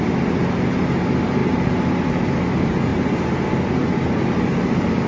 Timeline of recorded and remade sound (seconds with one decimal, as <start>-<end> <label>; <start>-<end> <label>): 0.0-5.1 recorded